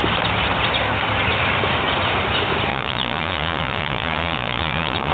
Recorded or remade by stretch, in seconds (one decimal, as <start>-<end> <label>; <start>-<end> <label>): 0.0-2.7 recorded; 2.7-5.1 remade